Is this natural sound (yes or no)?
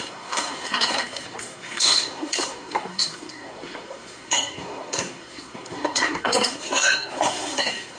no